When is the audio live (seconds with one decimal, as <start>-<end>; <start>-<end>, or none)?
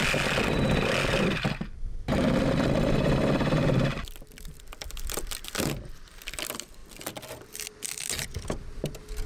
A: 6.8-9.3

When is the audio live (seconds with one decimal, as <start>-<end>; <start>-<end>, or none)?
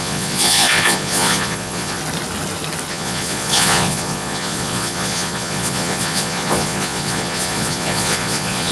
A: 2.0-2.9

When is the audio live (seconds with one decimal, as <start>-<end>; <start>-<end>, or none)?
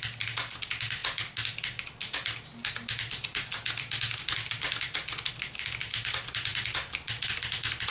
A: 0.0-7.9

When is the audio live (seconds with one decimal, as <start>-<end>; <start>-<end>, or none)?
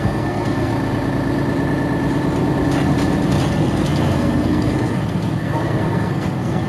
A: 0.7-3.5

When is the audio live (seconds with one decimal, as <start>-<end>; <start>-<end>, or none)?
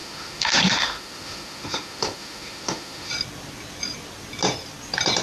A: 3.1-5.2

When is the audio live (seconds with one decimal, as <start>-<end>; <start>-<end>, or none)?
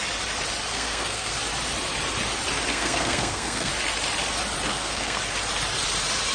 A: 0.0-0.7; 1.3-2.7; 3.7-4.7; 5.2-6.3